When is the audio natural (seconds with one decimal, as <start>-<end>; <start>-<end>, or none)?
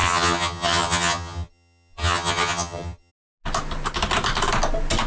3.1-5.1